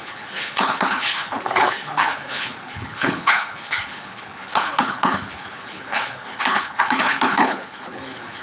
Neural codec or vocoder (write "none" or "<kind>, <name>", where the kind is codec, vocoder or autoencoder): codec, HILCodec